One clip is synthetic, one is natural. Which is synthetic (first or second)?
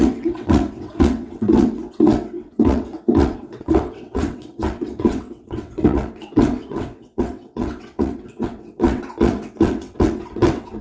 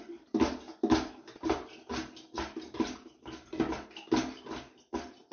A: first